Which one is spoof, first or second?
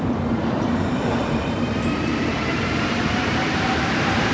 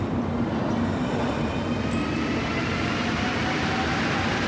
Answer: first